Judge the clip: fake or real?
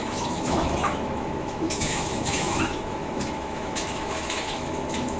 fake